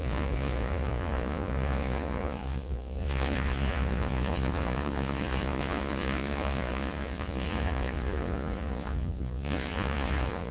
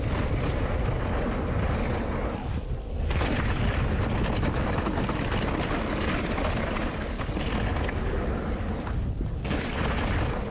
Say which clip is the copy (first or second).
first